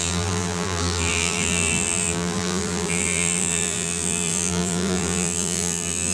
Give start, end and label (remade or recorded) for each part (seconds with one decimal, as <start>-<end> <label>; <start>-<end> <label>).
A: 0.0-6.1 remade